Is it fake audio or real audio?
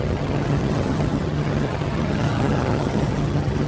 fake